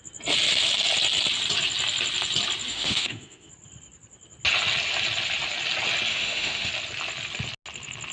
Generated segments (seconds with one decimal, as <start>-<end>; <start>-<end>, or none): 2.7-3.5; 6.1-6.7

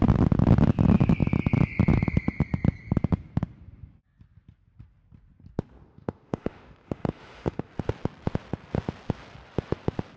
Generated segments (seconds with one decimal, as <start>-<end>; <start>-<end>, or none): 5.9-7.7

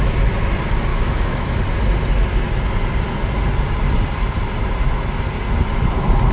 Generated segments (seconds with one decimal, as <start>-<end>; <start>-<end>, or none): 0.9-1.6